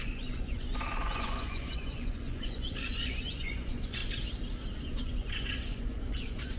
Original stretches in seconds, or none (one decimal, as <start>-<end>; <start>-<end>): 4.0-4.8